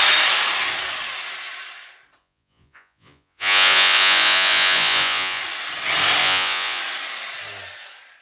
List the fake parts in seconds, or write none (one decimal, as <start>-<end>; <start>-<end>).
2.2-5.4; 6.2-6.8